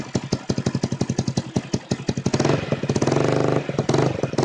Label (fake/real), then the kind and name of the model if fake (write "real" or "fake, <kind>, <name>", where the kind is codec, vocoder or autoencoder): real